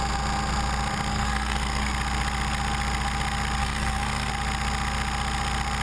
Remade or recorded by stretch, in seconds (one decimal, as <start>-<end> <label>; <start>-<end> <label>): 0.0-1.1 recorded; 1.1-1.9 remade; 1.9-3.6 recorded; 3.6-4.3 remade; 4.3-5.8 recorded